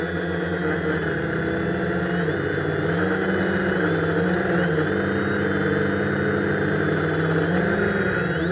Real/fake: real